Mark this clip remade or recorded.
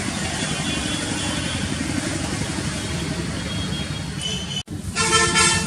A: recorded